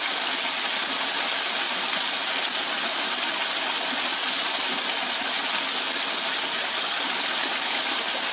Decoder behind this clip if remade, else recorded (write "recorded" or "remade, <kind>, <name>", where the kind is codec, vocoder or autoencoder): recorded